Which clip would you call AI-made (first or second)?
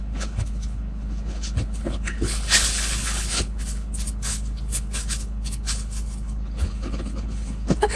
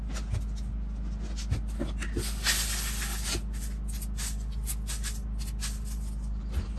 first